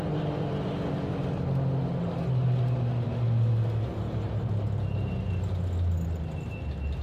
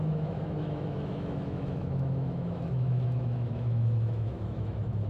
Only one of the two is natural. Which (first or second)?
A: first